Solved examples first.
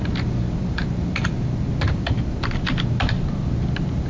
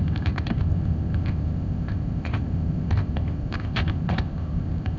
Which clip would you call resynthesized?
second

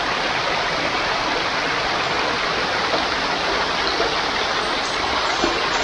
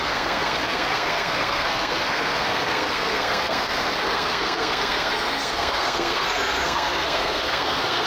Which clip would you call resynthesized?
second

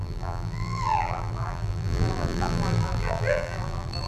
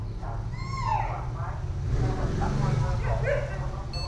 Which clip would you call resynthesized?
first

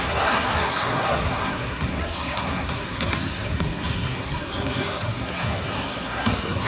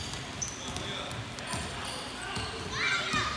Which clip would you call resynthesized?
first